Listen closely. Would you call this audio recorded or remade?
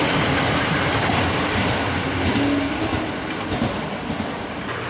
recorded